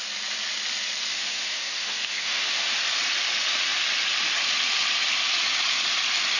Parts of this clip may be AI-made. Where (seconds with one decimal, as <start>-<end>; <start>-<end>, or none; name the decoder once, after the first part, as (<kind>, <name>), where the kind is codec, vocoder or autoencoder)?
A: 1.1-2.7 (autoencoder, DAC-VAE)